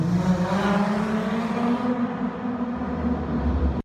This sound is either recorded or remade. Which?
recorded